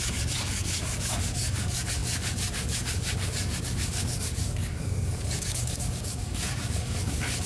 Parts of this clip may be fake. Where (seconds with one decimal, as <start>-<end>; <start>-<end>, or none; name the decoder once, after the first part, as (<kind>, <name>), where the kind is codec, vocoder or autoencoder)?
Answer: 0.0-7.5 (codec, DAC)